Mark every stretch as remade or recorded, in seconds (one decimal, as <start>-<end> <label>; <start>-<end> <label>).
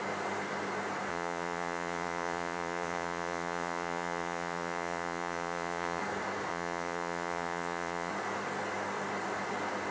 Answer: 0.0-1.1 recorded; 1.1-6.0 remade; 6.0-6.5 recorded; 6.5-8.1 remade; 8.1-9.9 recorded